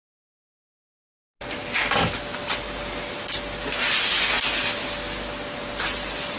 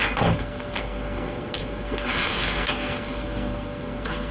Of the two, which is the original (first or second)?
first